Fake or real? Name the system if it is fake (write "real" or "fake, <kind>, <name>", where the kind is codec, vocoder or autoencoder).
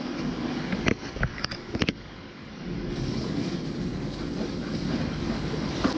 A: fake, codec, DAC